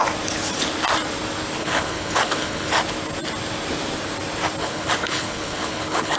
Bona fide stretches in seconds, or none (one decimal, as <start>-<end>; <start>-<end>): 0.0-1.6; 2.7-4.6